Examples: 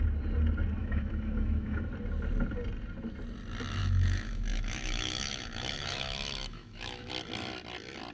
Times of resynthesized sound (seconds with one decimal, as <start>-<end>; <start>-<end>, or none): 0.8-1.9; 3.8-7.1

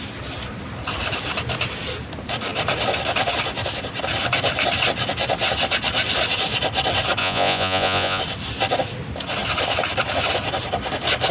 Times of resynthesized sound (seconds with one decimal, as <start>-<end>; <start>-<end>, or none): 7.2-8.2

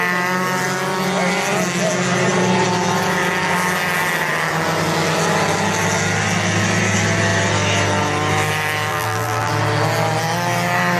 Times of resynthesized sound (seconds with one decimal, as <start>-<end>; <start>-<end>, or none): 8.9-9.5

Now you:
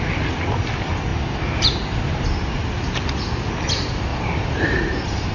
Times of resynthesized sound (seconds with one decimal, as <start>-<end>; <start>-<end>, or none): 4.1-5.3

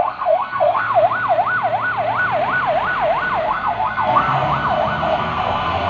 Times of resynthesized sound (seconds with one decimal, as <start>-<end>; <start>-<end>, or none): 0.0-0.9; 3.4-4.5; 5.0-5.9

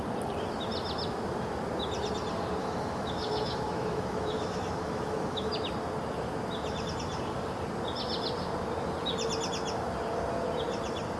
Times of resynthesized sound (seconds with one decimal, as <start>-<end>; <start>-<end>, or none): 2.6-5.5